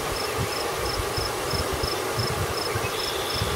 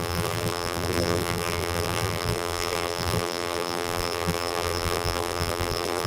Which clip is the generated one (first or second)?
second